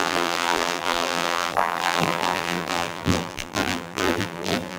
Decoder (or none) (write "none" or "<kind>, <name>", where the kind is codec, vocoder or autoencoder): vocoder, BigVGAN v2